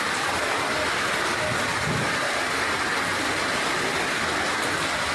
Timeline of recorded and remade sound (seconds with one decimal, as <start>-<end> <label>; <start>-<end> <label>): 0.0-5.1 recorded